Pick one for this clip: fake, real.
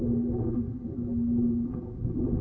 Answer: real